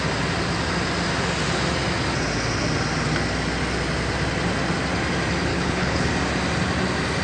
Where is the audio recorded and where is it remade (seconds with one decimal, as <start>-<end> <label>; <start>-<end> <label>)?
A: 0.0-5.5 recorded; 5.5-6.1 remade; 6.1-7.2 recorded